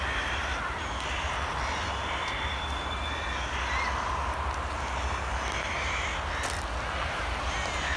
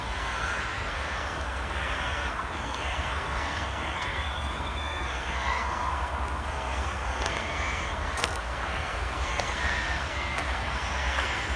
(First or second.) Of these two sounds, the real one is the first